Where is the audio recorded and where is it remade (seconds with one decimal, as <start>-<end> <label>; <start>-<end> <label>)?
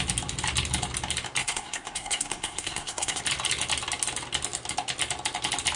0.0-1.4 recorded; 1.4-3.2 remade; 3.2-5.8 recorded